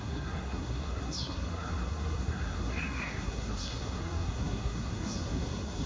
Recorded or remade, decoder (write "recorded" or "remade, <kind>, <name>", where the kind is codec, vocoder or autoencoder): remade, codec, SNAC